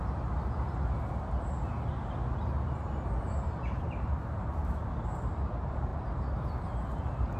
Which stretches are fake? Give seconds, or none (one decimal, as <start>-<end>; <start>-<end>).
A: 2.4-4.6; 5.9-6.5